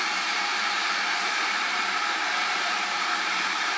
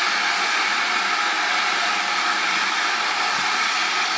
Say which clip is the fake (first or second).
first